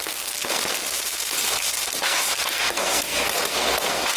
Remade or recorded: remade